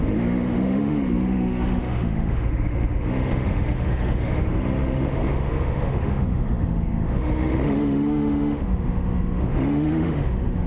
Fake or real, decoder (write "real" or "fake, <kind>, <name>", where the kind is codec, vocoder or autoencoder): fake, autoencoder, DAC-VAE